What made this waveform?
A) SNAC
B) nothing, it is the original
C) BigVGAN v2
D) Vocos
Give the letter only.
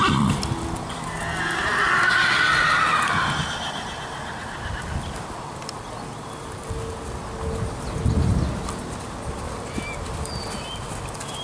B